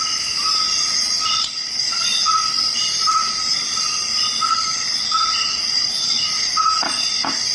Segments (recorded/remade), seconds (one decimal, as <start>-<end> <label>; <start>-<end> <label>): 0.0-0.7 recorded; 0.7-2.3 remade; 2.3-4.5 recorded; 4.5-7.1 remade; 7.1-7.5 recorded